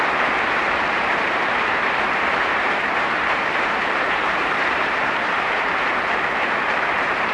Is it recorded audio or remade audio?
remade